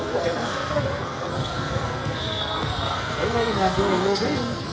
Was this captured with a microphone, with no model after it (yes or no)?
no